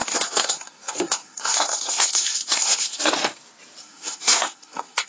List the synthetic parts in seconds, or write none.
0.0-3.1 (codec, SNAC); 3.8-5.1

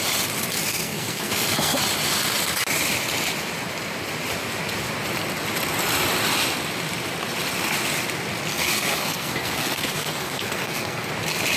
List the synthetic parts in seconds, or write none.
0.7-1.8 (codec, SNAC); 8.5-11.1

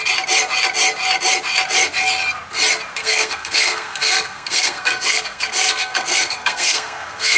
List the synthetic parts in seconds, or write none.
3.0-7.4 (codec, SNAC)

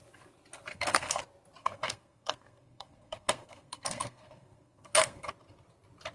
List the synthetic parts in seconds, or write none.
0.7-1.2 (codec, SNAC); 1.6-5.3

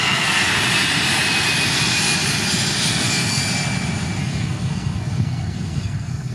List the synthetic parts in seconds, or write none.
0.0-0.5 (codec, SNAC); 2.9-3.4; 4.2-6.3